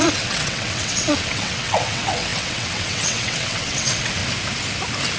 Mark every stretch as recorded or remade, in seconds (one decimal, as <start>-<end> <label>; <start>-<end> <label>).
0.0-4.2 remade; 4.2-5.2 recorded